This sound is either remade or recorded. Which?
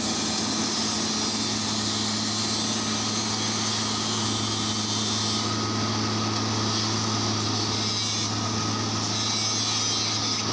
recorded